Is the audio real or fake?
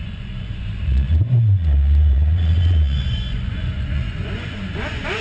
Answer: fake